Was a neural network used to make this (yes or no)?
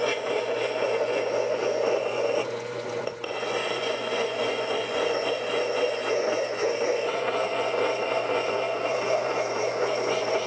yes